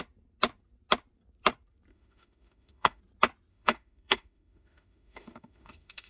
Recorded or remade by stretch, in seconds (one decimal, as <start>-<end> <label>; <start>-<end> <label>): 0.0-1.9 recorded; 1.9-3.0 remade; 3.0-3.5 recorded; 3.5-6.1 remade